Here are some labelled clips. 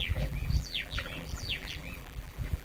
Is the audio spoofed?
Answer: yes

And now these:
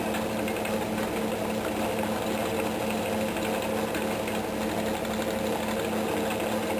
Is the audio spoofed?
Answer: no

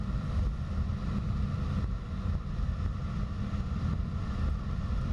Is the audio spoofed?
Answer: no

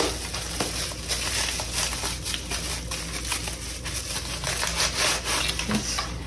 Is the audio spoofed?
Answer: no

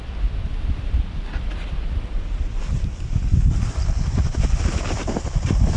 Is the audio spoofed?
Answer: yes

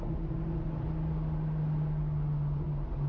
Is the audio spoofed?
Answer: no